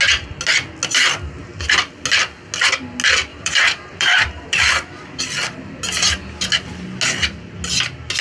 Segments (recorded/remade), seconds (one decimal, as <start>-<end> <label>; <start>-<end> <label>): 0.0-3.3 recorded; 3.3-5.2 remade; 5.2-8.2 recorded